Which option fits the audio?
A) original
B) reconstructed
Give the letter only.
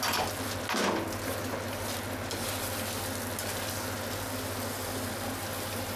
A